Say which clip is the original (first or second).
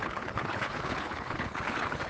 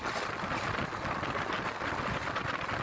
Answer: second